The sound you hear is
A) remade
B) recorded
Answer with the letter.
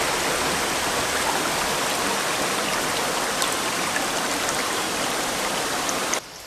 B